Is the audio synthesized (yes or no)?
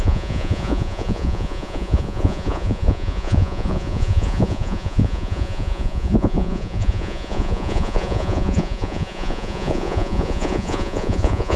yes